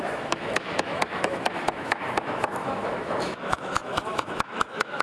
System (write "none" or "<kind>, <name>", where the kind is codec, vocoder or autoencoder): autoencoder, DAC-VAE